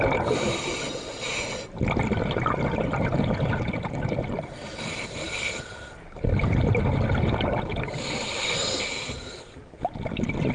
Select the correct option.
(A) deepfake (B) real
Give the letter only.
B